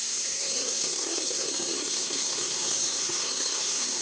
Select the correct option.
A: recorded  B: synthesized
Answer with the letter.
B